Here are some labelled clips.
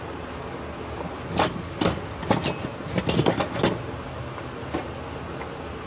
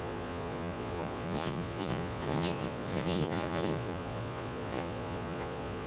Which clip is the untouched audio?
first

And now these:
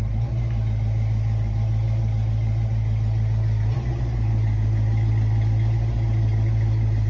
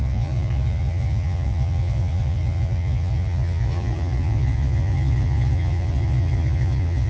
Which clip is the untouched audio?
first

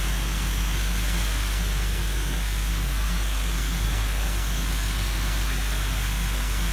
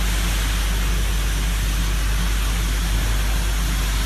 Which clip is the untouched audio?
second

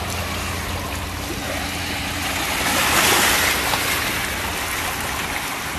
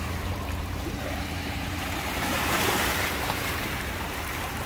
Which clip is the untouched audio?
first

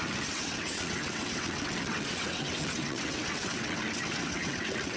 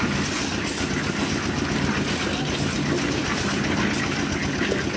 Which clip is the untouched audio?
second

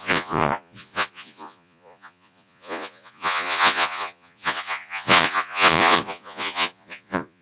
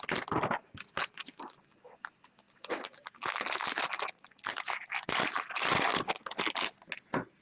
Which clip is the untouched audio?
second